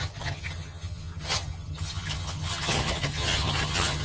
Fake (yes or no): yes